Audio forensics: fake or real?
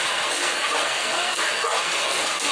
fake